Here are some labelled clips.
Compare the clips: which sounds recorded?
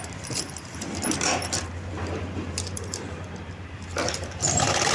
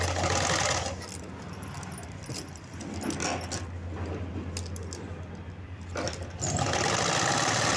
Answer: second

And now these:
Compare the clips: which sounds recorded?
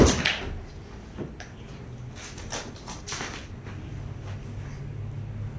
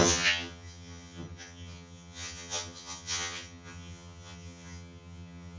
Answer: first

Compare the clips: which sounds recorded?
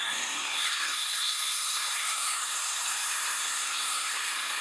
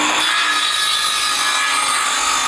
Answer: second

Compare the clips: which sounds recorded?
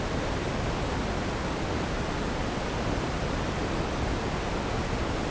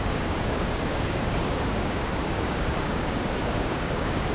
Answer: first